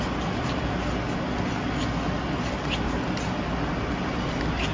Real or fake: real